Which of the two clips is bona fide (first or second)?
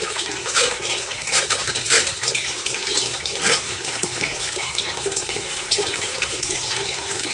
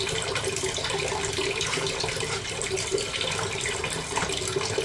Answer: second